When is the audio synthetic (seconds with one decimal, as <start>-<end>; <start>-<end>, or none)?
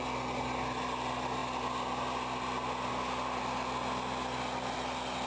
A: none